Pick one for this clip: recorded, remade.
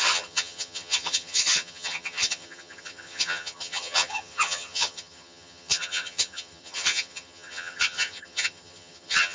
remade